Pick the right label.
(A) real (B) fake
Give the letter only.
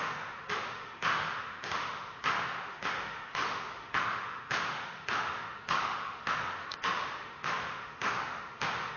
B